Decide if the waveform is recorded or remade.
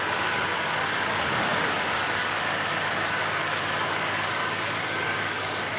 remade